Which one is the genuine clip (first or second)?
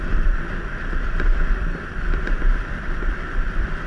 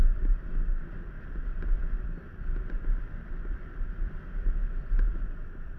second